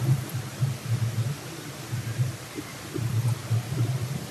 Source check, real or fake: fake